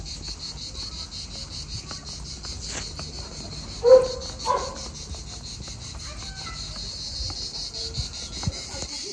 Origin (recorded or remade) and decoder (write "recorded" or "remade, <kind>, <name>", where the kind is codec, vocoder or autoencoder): recorded